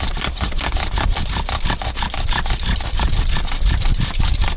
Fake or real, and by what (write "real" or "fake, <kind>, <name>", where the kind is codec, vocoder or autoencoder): real